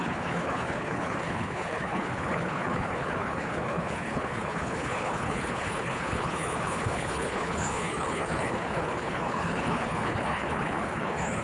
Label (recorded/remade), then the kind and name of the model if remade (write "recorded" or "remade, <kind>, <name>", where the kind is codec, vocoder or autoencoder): remade, codec, HILCodec